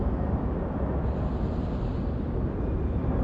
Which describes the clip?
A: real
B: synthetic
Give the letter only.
A